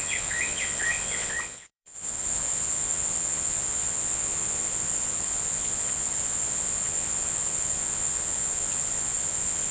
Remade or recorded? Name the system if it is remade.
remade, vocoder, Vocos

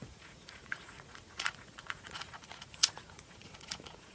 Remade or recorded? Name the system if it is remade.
remade, vocoder, Vocos